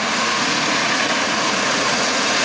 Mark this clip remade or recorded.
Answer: remade